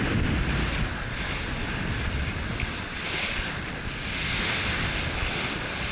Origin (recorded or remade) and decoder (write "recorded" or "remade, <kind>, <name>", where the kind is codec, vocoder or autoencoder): recorded